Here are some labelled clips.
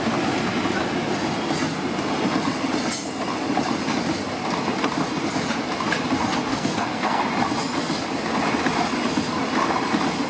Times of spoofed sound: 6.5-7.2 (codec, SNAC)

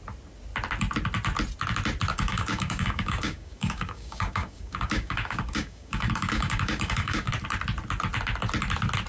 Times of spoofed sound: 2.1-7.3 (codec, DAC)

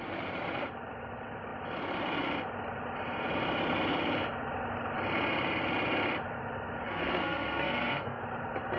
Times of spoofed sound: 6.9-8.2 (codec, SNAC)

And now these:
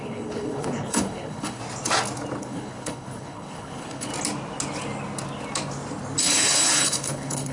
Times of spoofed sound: 0.0-1.6 (codec, HILCodec); 2.4-4.1; 6.2-7.5

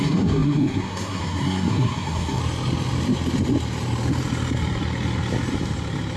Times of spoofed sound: 0.0-2.4 (codec, SNAC)

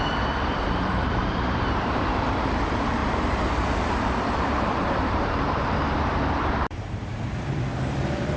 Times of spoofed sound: 0.0-3.0 (vocoder, BigVGAN v2); 3.5-8.4